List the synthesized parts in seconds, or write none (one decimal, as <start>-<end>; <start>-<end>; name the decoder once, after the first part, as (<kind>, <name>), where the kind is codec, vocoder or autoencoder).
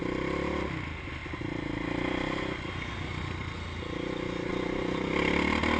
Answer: none